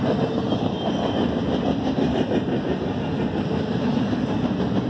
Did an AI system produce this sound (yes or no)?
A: no